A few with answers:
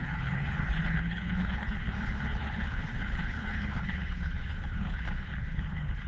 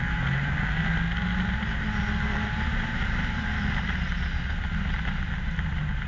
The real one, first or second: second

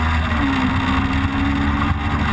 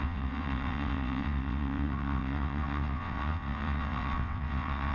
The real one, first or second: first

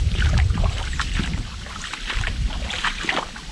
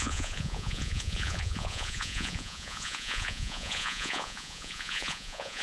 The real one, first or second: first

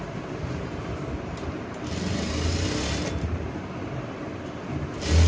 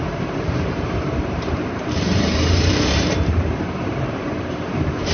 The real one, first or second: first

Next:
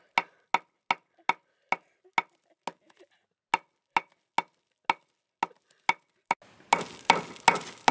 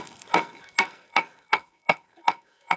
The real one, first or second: first